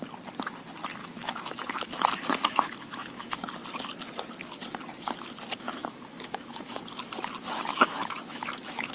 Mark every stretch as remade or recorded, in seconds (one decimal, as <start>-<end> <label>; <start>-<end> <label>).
0.0-1.0 recorded; 1.0-3.5 remade; 3.5-5.8 recorded; 5.8-6.8 remade; 6.8-7.7 recorded; 7.7-8.9 remade